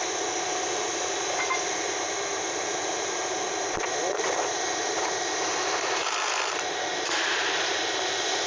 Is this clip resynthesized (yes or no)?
yes